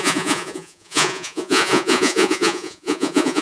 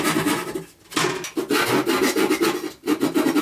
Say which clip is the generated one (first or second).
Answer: first